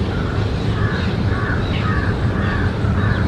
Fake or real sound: fake